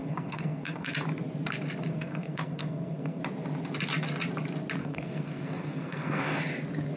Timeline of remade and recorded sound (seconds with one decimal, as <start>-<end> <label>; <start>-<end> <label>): 0.0-0.9 remade; 0.9-1.9 recorded; 1.9-3.2 remade; 3.2-4.8 recorded; 4.8-6.4 remade; 6.4-7.0 recorded